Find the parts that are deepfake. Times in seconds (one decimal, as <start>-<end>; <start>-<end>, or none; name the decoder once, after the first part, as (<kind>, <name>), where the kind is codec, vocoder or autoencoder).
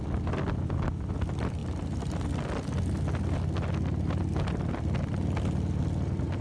none